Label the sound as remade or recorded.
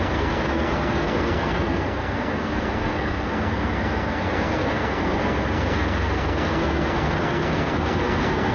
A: remade